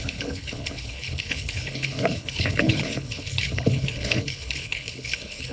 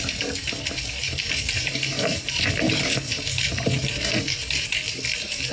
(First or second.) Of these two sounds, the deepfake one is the first